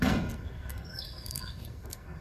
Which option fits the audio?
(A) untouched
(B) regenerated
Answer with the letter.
B